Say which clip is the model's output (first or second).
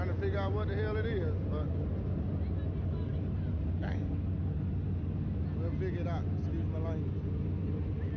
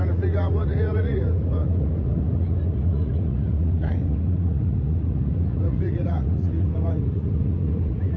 second